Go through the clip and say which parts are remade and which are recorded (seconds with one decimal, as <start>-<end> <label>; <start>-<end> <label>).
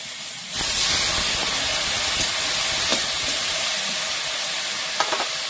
0.0-2.9 recorded; 2.9-3.9 remade; 3.9-5.5 recorded